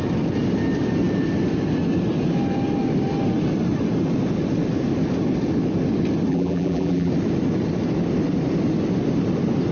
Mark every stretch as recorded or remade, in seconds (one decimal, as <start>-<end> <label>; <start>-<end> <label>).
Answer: 0.0-6.3 recorded; 6.3-7.1 remade; 7.1-9.7 recorded